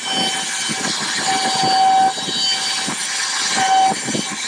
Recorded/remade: recorded